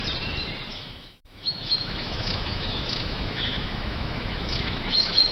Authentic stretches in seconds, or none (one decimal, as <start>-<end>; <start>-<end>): 0.0-0.7